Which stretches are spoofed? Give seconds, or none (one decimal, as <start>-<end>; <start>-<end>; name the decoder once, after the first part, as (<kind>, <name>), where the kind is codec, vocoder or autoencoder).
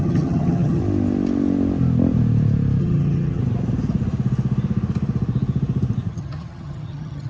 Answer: 0.0-0.8 (vocoder, HiFi-GAN); 2.8-3.4; 6.1-7.3